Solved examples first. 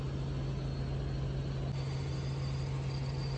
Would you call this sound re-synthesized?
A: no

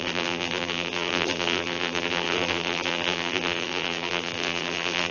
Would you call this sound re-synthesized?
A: yes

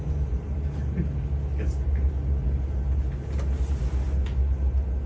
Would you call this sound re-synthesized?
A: no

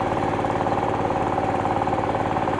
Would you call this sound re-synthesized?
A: yes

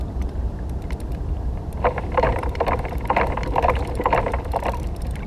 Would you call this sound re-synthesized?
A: yes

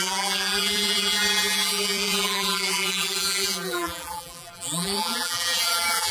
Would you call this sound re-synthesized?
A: yes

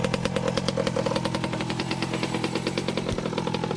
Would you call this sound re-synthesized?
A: no